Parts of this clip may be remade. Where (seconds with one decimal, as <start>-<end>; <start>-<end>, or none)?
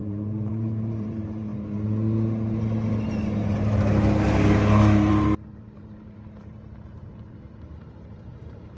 0.0-1.5; 5.1-8.8